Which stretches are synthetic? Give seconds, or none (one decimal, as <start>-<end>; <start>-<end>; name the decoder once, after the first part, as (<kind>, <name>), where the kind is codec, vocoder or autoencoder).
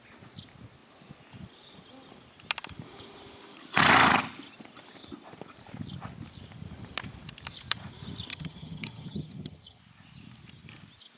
8.3-9.8 (vocoder, HiFi-GAN)